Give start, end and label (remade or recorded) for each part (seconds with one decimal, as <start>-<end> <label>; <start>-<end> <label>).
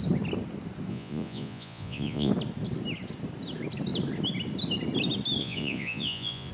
0.0-0.9 recorded; 0.9-2.3 remade; 2.3-5.4 recorded; 5.4-6.5 remade